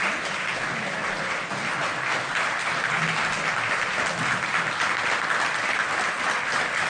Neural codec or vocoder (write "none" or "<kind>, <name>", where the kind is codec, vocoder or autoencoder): none